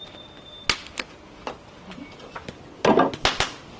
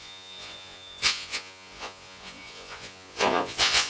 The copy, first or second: second